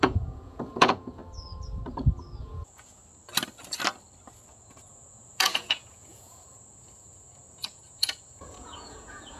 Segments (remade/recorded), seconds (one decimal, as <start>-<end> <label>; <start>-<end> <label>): 0.0-1.2 remade; 1.2-2.4 recorded; 2.4-3.0 remade; 3.0-4.5 recorded; 4.5-9.4 remade